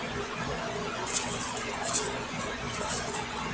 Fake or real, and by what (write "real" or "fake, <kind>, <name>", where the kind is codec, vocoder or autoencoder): fake, vocoder, Vocos